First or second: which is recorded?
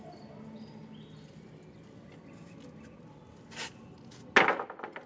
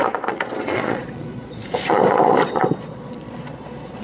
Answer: first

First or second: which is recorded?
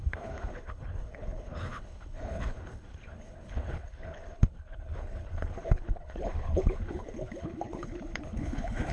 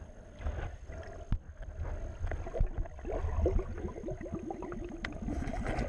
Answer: second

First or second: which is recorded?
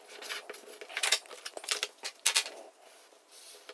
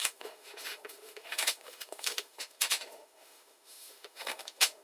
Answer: first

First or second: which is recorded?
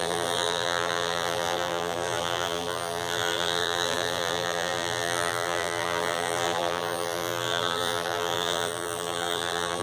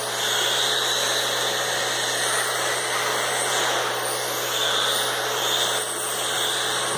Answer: second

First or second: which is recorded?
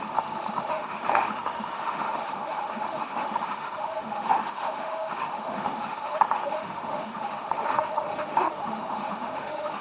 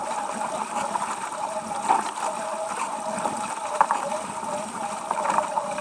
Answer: second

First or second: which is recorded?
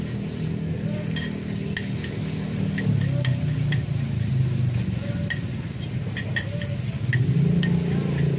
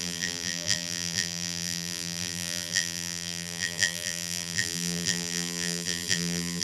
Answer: first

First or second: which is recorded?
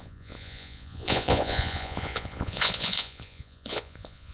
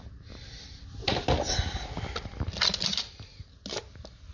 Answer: second